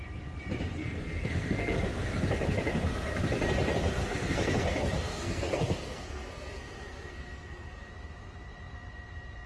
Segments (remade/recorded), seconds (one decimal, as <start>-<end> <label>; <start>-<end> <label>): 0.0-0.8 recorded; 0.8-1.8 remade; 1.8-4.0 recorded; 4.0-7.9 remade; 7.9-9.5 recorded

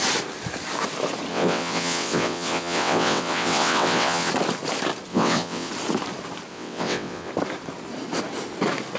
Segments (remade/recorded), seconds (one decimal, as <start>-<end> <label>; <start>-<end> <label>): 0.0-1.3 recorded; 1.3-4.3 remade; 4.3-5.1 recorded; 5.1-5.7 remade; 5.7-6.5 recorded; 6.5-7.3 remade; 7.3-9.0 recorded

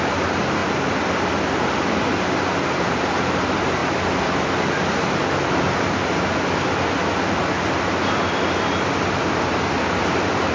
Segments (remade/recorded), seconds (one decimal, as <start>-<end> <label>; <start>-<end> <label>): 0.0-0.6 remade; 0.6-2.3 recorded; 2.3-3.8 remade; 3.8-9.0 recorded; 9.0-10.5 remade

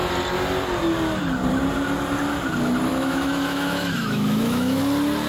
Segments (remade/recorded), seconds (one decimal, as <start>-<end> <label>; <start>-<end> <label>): 0.0-2.9 recorded; 2.9-4.8 remade; 4.8-5.3 recorded

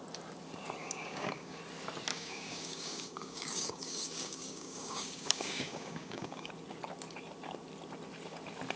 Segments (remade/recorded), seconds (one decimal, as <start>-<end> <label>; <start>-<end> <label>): 0.0-0.8 recorded; 0.8-1.6 remade; 1.6-2.1 recorded; 2.1-6.5 remade; 6.5-8.8 recorded

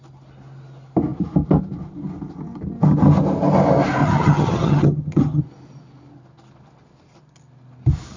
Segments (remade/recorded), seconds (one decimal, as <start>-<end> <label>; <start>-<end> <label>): 0.0-4.0 recorded; 4.0-5.4 remade; 5.4-8.2 recorded

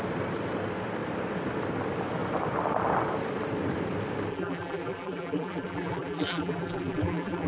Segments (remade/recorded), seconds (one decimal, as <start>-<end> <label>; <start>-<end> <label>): 0.0-4.3 recorded; 4.3-7.5 remade

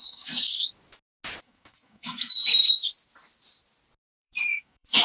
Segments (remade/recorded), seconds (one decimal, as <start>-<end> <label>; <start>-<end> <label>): 0.0-0.6 remade; 0.6-1.4 recorded; 1.4-2.4 remade; 2.4-4.0 recorded; 4.0-5.0 remade